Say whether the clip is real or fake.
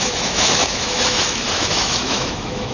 fake